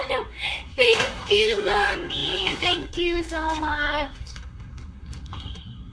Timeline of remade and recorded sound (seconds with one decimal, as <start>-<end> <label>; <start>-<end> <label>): 0.0-5.9 remade